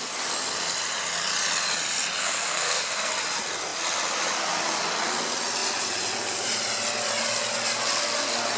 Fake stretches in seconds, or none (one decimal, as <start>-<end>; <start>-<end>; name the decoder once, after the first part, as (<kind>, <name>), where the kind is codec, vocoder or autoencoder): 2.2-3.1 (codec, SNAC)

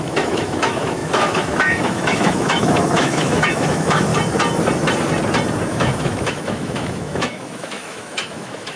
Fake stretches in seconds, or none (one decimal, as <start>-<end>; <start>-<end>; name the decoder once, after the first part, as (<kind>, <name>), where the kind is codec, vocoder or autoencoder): 0.0-4.1 (autoencoder, DAC-VAE); 5.7-8.8

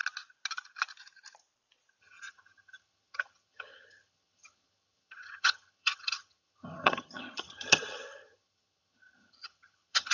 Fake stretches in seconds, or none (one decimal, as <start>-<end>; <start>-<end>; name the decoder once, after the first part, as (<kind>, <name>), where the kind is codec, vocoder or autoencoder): 2.0-10.1 (vocoder, HiFi-GAN)